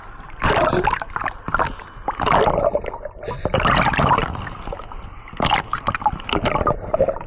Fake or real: real